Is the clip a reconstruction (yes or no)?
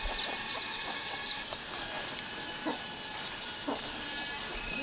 no